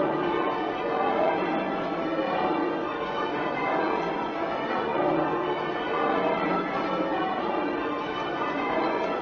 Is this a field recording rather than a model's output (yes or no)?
no